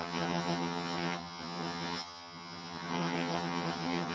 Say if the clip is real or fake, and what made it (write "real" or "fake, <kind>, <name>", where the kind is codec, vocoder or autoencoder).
fake, vocoder, HiFi-GAN